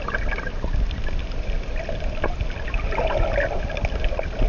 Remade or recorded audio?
recorded